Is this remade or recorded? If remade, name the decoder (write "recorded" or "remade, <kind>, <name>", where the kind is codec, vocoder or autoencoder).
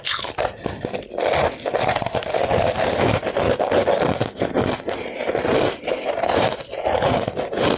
recorded